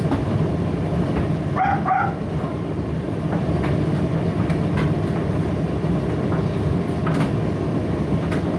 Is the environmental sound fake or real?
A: real